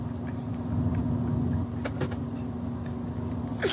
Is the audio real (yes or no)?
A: yes